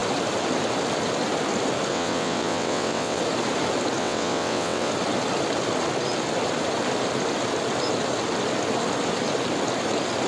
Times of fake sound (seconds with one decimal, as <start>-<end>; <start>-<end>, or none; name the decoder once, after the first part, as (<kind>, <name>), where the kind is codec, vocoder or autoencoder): 1.9-3.2 (vocoder, WaveNeXt); 4.0-4.9